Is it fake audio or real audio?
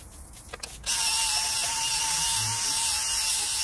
real